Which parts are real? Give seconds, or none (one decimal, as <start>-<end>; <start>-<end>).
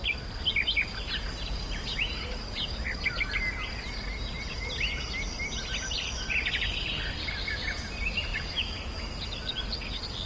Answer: 0.0-8.3; 9.1-10.3